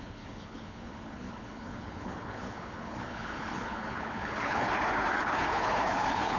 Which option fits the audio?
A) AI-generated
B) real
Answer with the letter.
A